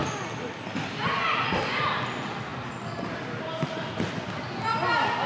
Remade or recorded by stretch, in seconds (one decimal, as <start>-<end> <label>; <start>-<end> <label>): 0.0-5.3 recorded